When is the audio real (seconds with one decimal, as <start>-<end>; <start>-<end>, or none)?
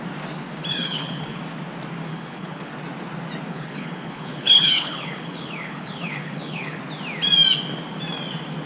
0.0-0.7; 1.4-2.1; 2.7-3.5; 6.8-8.7